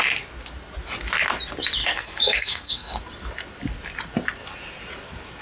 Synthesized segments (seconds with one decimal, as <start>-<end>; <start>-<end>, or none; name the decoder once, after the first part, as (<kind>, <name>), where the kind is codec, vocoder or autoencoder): 1.8-3.0 (codec, SNAC)